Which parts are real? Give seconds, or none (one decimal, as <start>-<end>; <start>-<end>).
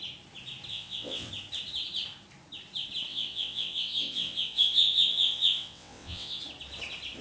0.0-0.7; 1.3-3.1; 6.4-7.2